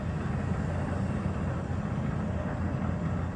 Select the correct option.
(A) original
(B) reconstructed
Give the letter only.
A